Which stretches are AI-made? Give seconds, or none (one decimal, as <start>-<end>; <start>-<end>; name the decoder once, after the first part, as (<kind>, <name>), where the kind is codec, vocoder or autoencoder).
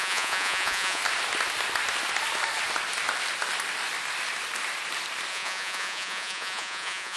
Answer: 0.0-1.0 (vocoder, Vocos); 5.3-7.2